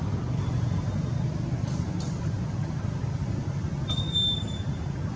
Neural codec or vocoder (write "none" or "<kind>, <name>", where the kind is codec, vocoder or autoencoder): none